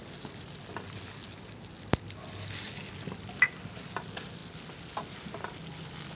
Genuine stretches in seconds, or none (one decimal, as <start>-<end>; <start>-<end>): 0.0-6.2